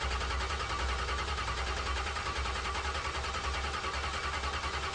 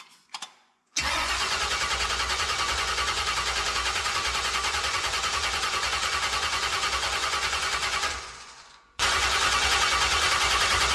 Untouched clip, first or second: first